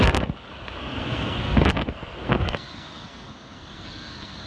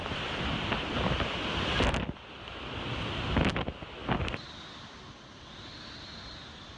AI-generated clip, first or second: first